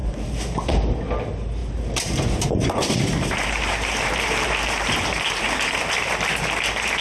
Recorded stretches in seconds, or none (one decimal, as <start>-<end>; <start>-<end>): 0.7-1.6; 5.8-7.0